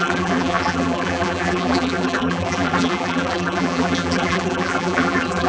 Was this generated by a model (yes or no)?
yes